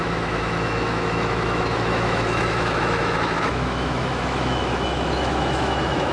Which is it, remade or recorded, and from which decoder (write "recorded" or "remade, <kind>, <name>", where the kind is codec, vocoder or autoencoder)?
remade, autoencoder, DAC-VAE